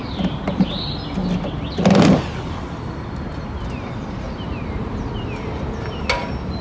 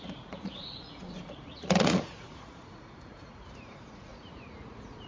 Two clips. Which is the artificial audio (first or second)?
second